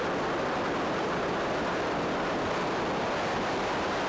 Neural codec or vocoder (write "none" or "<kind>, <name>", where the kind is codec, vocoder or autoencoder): none